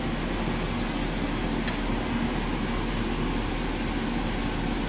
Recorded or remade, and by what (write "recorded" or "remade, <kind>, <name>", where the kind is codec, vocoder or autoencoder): recorded